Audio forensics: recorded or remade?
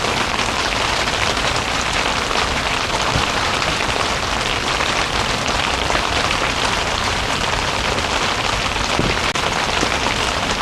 remade